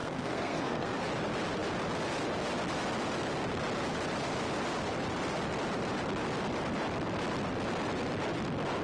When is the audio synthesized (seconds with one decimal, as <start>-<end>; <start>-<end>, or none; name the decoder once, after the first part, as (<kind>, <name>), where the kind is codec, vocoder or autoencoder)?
0.0-1.0 (codec, SNAC)